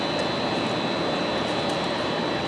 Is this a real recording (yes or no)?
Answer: yes